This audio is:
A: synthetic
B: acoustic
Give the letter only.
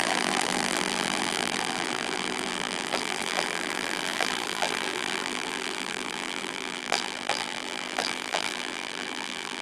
A